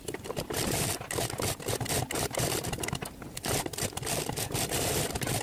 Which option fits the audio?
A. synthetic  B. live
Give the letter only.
B